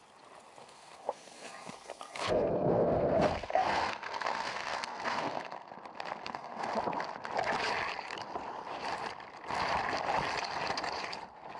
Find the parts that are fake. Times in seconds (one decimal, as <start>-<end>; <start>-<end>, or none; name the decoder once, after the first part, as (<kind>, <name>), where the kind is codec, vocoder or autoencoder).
0.6-5.7 (codec, SNAC); 6.2-6.7